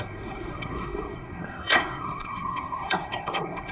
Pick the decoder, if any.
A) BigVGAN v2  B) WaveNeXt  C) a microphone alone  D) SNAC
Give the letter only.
D